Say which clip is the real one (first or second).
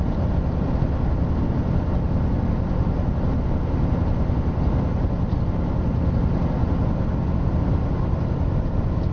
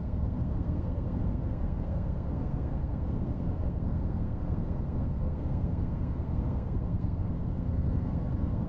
first